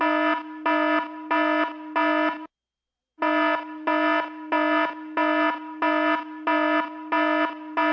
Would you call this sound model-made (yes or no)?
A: no